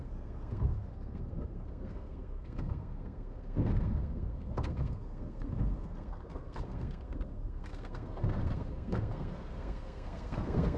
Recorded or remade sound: remade